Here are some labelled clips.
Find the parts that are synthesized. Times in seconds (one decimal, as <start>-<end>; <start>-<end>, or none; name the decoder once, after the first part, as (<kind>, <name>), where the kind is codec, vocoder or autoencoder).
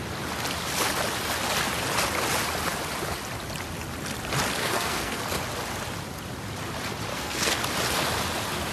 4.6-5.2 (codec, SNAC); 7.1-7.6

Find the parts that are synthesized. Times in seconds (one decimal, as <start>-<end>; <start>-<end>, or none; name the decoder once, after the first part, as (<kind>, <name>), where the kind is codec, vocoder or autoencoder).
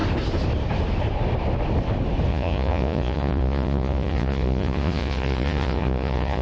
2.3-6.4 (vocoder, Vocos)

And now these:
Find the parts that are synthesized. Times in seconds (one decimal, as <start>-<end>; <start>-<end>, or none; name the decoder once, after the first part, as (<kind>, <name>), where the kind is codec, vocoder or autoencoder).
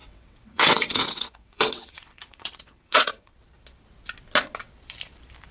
0.0-3.3 (vocoder, WaveNeXt)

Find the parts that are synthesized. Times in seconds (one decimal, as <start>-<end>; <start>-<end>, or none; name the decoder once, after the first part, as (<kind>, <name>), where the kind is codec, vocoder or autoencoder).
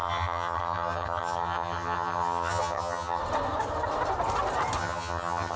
0.0-3.2 (vocoder, HiFi-GAN); 4.8-5.6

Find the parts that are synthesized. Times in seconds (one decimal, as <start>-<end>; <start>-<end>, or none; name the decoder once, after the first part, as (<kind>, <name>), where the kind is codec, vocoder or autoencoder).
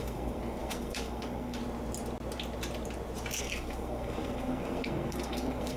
0.0-1.6 (codec, SNAC); 3.4-5.8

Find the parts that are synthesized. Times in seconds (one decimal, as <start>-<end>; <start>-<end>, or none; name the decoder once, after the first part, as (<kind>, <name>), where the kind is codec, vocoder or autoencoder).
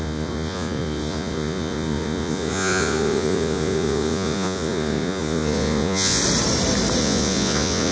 0.0-6.2 (vocoder, Vocos); 7.0-7.9